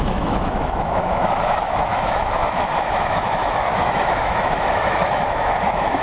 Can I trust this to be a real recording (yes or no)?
no